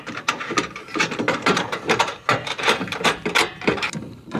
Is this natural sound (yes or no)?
no